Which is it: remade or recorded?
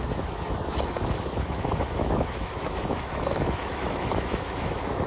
remade